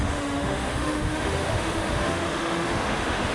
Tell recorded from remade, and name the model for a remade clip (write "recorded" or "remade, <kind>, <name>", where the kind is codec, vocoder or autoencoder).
remade, autoencoder, DAC-VAE